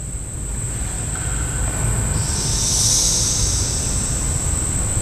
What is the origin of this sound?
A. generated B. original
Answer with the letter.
B